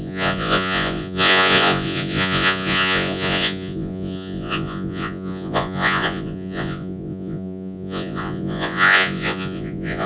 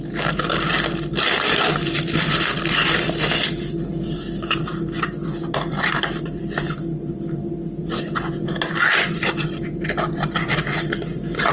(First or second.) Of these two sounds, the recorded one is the second